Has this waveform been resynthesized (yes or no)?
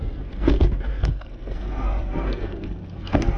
yes